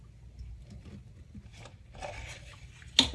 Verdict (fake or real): real